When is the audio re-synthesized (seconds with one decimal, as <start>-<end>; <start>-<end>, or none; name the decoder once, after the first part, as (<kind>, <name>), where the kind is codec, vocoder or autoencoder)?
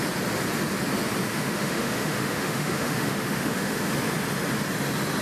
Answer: 1.3-3.9 (autoencoder, DAC-VAE)